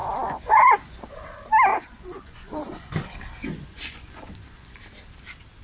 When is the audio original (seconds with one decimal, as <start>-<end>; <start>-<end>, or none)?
1.1-1.7; 2.9-3.4; 4.8-5.6